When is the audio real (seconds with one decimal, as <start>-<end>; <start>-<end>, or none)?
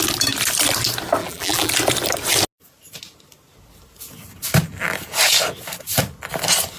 0.0-1.2; 1.7-6.8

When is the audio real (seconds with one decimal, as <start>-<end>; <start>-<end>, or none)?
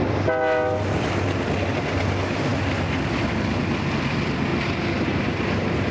0.0-5.9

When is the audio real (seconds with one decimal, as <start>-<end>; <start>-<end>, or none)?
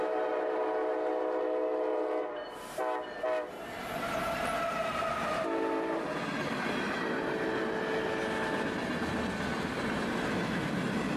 0.0-11.2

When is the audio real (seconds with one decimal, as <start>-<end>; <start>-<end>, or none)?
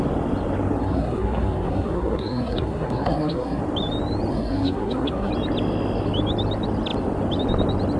0.0-0.8; 3.6-4.3; 5.3-8.0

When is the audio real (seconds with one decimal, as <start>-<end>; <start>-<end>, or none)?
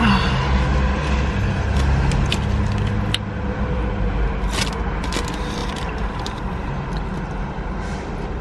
0.0-8.4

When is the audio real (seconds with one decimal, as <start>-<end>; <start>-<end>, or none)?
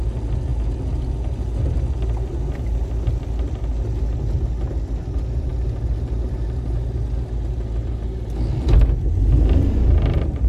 0.0-10.5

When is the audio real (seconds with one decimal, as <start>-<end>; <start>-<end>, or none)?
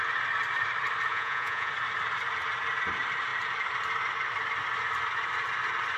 0.0-1.1; 1.7-6.0